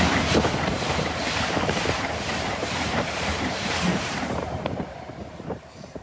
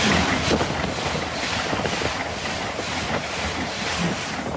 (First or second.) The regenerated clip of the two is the first